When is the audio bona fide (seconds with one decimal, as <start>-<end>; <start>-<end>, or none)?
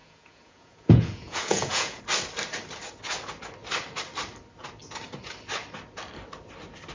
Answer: 2.0-6.9